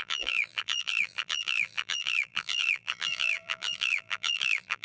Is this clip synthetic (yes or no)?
yes